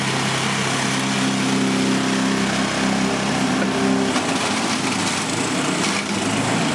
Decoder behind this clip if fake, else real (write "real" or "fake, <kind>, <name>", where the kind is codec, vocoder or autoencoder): real